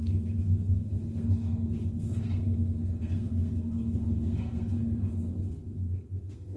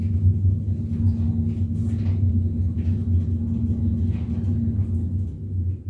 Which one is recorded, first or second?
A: second